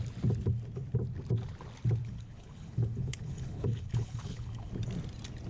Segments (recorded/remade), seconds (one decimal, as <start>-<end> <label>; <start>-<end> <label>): 0.0-2.0 recorded; 2.0-4.7 remade; 4.7-5.5 recorded

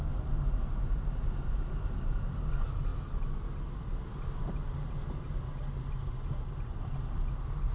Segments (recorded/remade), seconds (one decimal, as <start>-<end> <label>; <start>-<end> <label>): 0.0-7.7 recorded